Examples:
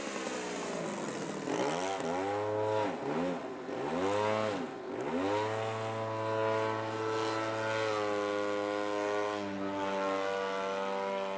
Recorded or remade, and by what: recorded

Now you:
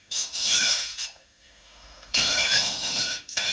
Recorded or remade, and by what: remade, autoencoder, DAC-VAE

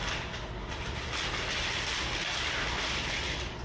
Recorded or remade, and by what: recorded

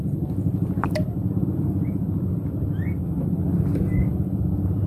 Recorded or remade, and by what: recorded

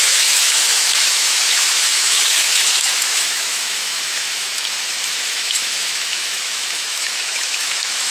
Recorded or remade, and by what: remade, autoencoder, DAC-VAE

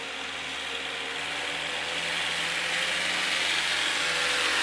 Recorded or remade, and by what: recorded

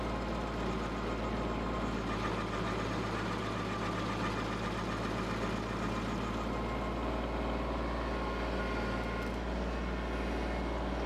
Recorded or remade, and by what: recorded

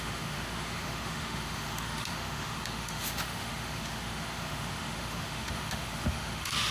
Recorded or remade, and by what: remade, autoencoder, DAC-VAE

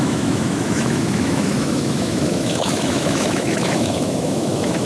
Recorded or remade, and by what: remade, autoencoder, DAC-VAE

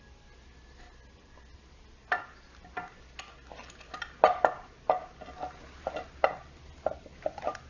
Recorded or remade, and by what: recorded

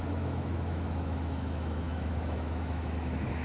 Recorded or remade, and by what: remade, autoencoder, DAC-VAE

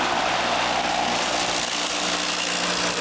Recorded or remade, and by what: recorded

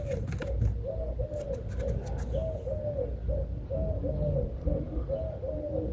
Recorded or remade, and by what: recorded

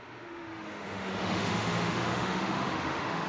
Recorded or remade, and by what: remade, autoencoder, DAC-VAE